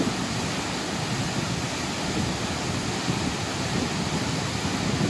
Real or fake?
real